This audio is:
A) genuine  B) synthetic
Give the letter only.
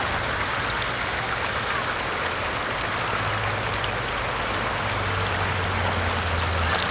A